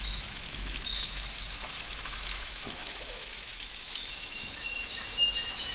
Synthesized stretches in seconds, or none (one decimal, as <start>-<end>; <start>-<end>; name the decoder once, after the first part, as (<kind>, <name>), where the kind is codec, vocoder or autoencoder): 0.0-5.7 (autoencoder, DAC-VAE)